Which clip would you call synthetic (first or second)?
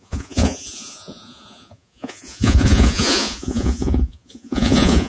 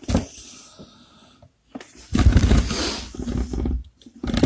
first